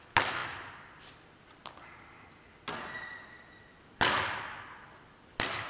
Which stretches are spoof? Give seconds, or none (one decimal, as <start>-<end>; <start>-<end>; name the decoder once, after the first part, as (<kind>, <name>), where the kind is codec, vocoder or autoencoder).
none